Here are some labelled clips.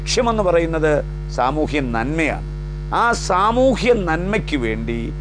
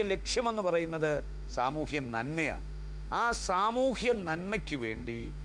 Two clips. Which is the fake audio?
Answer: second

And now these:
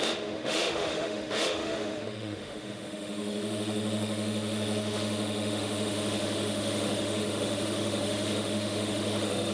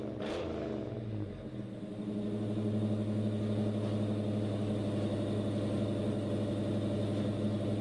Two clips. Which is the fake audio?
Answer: first